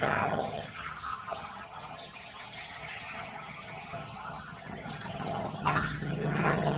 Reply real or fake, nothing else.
fake